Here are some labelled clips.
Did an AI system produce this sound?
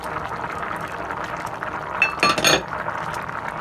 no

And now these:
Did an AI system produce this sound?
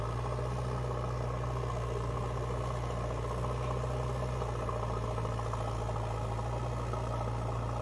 no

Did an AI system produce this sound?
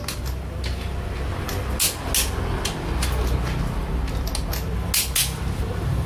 no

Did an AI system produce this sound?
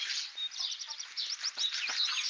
no